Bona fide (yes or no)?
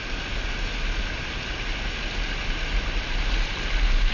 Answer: yes